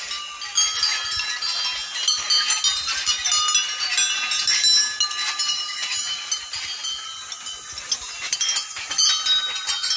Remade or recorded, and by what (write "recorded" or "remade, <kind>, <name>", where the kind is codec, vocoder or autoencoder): recorded